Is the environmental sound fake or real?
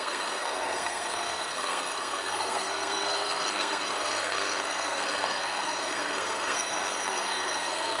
fake